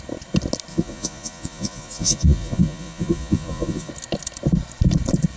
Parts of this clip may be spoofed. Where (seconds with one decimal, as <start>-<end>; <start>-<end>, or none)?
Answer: 0.7-3.9